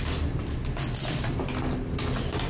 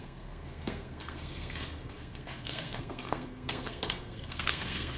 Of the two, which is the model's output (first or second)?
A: second